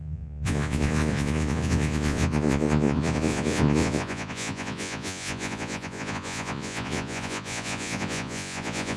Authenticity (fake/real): fake